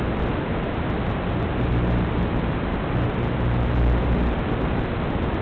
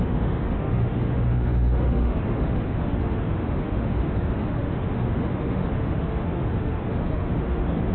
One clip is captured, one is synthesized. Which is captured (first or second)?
first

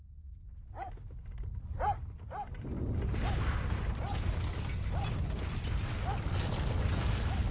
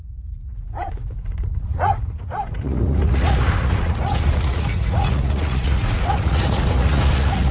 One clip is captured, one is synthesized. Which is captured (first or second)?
first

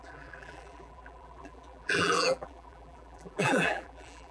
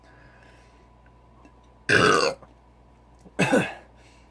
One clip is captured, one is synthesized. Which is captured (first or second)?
second